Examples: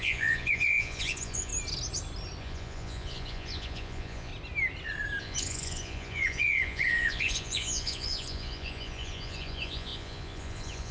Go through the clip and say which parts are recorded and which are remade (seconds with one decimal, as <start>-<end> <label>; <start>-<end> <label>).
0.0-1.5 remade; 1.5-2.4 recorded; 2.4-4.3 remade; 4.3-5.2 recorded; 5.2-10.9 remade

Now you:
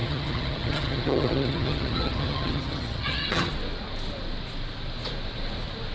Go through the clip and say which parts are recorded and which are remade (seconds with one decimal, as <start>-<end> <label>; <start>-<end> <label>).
0.0-3.5 remade; 3.5-5.9 recorded

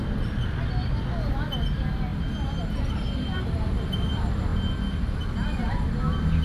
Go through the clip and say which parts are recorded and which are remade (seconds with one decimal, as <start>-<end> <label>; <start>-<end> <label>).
0.0-6.4 recorded

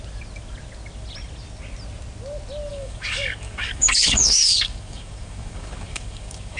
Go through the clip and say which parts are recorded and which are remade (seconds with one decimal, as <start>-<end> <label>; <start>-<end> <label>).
0.0-2.7 recorded; 2.7-6.6 remade

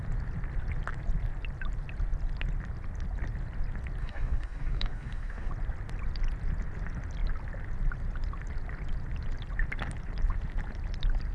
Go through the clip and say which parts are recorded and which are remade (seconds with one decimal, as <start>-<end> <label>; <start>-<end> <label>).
0.0-4.0 recorded; 4.0-5.5 remade; 5.5-11.3 recorded